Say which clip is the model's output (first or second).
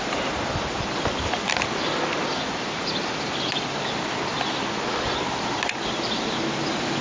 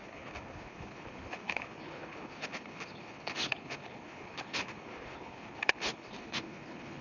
second